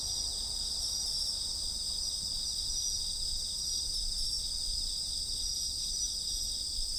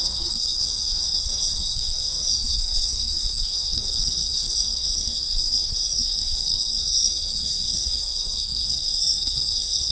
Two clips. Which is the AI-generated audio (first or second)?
second